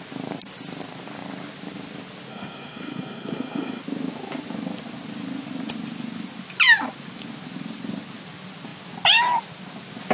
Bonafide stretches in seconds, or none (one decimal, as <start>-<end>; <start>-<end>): 0.0-2.3; 3.8-10.1